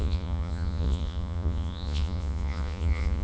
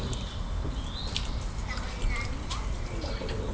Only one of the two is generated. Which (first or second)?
first